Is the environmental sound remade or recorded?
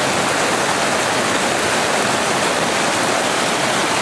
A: recorded